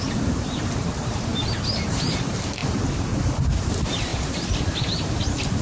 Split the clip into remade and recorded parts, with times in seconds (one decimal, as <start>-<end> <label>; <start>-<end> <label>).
0.0-1.3 remade; 1.3-1.9 recorded; 1.9-4.1 remade; 4.1-4.8 recorded; 4.8-5.6 remade